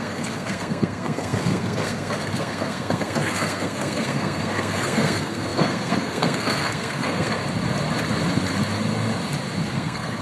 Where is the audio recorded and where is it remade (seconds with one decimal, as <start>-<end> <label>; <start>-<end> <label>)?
0.0-7.4 remade; 7.4-9.7 recorded; 9.7-10.2 remade